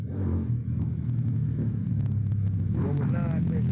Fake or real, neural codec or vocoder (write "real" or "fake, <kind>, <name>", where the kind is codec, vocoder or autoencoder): fake, autoencoder, DAC-VAE